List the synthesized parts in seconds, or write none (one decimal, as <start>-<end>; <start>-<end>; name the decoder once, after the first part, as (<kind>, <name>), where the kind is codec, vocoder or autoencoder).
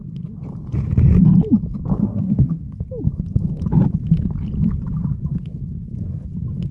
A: 2.0-2.8 (codec, SNAC)